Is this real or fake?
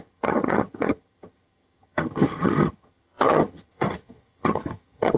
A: fake